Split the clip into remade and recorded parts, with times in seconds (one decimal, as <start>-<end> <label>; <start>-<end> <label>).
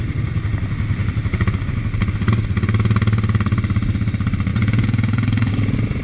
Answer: 0.0-4.5 recorded; 4.5-5.5 remade; 5.5-6.0 recorded